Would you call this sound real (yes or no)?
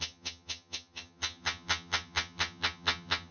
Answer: no